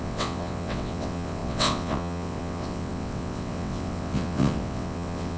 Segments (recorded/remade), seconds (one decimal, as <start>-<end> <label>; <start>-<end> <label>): 0.0-5.4 remade